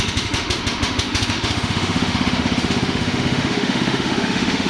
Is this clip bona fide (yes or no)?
no